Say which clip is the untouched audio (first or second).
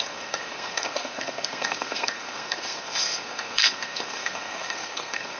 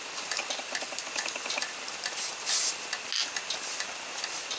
second